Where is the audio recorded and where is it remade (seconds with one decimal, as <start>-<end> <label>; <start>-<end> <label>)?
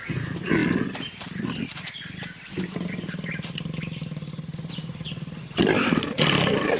0.0-6.8 recorded